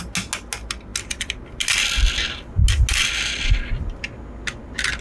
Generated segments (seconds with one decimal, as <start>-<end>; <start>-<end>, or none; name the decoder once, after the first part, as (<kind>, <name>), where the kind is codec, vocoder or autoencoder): none

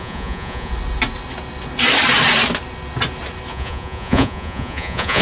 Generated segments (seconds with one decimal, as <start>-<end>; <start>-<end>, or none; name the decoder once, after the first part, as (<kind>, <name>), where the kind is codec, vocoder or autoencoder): 0.0-0.7 (vocoder, Vocos); 3.5-5.2

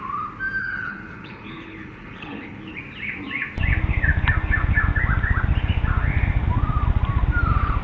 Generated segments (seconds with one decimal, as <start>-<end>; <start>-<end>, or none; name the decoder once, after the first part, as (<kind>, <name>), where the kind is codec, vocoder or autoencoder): 0.6-2.8 (codec, HILCodec)

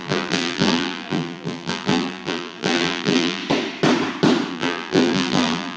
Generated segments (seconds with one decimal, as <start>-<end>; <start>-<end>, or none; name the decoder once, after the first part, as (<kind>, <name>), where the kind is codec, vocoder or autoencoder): 0.0-3.4 (vocoder, BigVGAN v2); 4.5-5.8

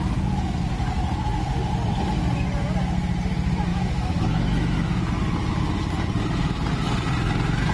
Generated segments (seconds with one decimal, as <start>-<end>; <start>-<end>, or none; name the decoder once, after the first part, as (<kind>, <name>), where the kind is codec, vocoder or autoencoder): 3.7-5.0 (autoencoder, DAC-VAE)

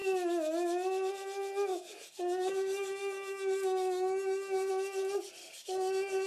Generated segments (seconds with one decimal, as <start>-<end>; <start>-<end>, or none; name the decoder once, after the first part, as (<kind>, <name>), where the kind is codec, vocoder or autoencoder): 1.7-4.7 (codec, DAC); 5.4-6.3

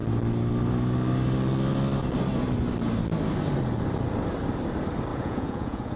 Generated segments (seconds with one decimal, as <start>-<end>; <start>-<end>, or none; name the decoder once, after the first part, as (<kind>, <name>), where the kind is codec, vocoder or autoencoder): 5.1-6.0 (vocoder, Vocos)